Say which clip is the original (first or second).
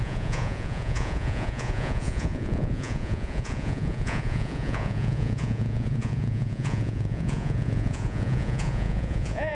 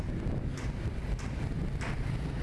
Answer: second